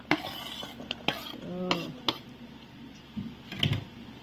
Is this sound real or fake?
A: real